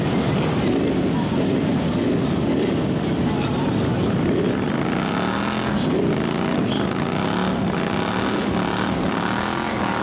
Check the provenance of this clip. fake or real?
real